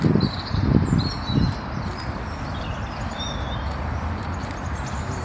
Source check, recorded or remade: remade